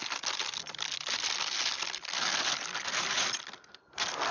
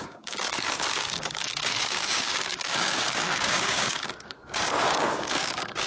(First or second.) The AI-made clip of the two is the second